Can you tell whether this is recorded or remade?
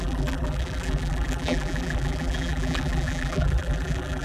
remade